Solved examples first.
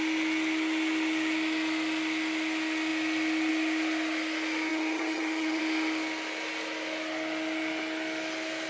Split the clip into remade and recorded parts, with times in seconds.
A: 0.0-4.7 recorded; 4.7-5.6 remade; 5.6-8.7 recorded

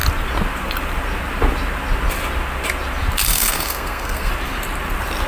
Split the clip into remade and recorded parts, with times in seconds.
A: 0.0-3.3 recorded; 3.3-4.3 remade; 4.3-5.3 recorded

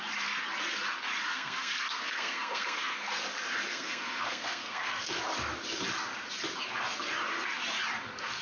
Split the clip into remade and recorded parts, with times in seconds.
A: 0.0-1.3 recorded; 1.3-3.1 remade; 3.1-3.7 recorded; 3.7-5.1 remade; 5.1-8.4 recorded

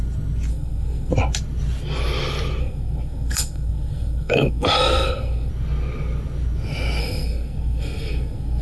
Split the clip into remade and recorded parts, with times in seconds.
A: 0.0-0.5 recorded; 0.5-1.1 remade; 1.1-2.6 recorded; 2.6-5.5 remade; 5.5-7.0 recorded; 7.0-8.6 remade

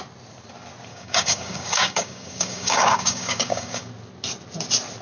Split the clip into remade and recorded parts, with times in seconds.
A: 0.0-0.9 recorded; 0.9-3.9 remade; 3.9-5.0 recorded

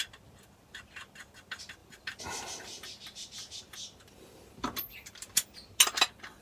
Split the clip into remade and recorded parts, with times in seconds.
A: 0.0-1.8 recorded; 1.8-3.6 remade; 3.6-6.4 recorded

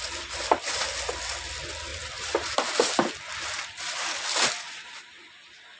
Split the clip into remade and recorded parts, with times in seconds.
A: 0.0-5.8 recorded